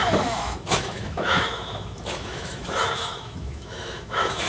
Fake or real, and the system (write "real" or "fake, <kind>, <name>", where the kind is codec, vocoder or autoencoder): fake, autoencoder, DAC-VAE